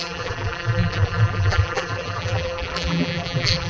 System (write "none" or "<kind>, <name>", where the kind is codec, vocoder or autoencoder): vocoder, BigVGAN v2